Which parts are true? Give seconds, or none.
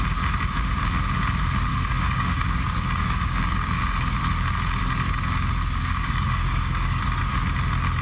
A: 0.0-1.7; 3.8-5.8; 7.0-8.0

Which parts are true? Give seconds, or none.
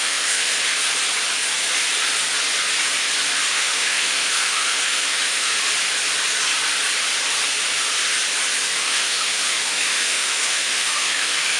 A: 0.5-3.5; 5.5-8.6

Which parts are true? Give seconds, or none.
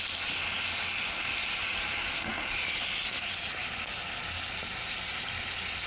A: 0.0-5.9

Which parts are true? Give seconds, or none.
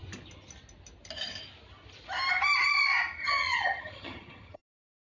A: 0.0-3.2; 4.6-5.0